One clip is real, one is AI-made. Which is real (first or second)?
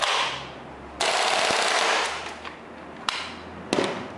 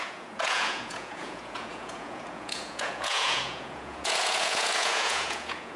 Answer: first